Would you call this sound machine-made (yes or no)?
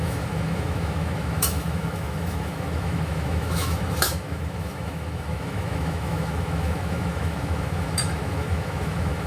yes